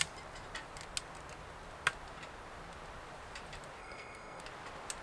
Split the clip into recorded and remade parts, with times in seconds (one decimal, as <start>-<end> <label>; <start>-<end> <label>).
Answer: 0.0-3.8 recorded; 3.8-4.4 remade; 4.4-5.0 recorded